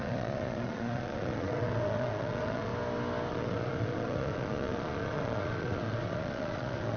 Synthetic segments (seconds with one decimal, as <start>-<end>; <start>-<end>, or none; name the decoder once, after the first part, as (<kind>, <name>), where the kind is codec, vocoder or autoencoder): 0.0-2.7 (vocoder, Vocos); 3.3-7.0